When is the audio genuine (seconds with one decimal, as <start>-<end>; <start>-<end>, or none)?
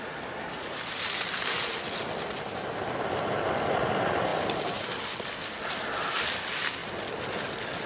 0.0-7.9